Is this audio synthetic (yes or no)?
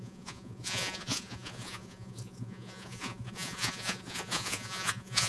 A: yes